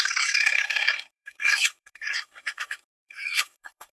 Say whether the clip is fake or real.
fake